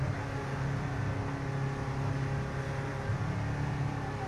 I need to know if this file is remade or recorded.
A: recorded